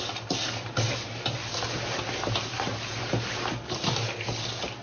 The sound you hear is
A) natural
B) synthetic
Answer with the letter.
A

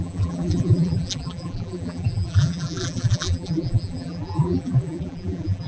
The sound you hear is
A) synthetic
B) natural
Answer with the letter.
A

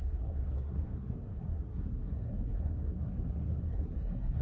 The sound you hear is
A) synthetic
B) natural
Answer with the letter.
A